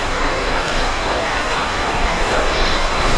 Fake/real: fake